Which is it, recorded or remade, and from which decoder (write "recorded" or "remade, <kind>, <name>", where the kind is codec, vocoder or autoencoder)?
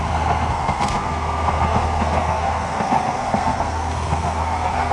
remade, codec, SNAC